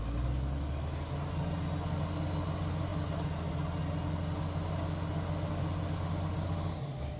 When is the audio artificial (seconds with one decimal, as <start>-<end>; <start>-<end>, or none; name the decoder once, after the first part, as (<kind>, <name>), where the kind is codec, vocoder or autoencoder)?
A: none